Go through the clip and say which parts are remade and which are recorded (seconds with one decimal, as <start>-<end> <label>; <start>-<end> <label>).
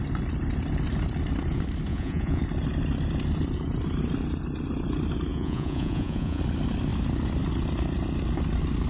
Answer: 0.0-1.9 recorded; 1.9-2.4 remade; 2.4-5.3 recorded; 5.3-6.4 remade; 6.4-8.9 recorded